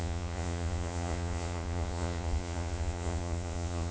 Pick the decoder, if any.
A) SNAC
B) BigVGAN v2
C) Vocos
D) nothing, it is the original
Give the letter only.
C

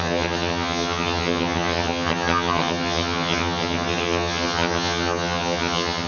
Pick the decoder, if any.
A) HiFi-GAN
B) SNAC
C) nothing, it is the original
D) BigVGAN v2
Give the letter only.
A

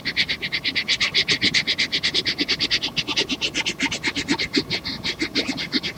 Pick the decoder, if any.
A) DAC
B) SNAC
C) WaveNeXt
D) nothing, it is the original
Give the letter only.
D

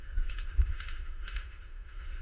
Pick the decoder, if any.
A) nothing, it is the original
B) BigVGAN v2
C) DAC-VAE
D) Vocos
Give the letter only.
C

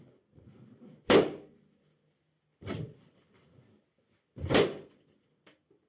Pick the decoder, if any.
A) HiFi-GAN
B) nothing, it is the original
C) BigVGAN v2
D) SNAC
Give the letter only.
B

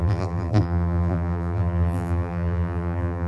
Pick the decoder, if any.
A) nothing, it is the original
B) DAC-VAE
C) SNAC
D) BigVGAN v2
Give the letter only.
D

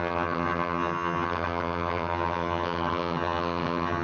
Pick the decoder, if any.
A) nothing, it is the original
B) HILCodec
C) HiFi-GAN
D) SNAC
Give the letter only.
C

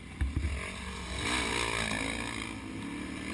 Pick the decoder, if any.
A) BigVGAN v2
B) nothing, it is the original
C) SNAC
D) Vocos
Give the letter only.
B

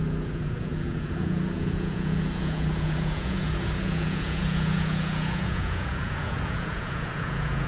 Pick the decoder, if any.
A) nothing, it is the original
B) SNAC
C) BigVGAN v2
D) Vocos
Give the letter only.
D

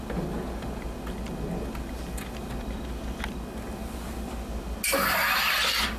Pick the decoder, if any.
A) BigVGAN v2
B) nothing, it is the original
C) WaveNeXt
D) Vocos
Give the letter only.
B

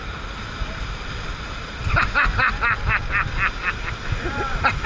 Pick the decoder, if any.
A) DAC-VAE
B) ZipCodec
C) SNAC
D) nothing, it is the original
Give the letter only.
D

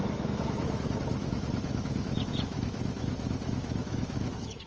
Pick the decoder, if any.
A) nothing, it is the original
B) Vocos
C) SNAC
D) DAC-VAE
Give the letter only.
D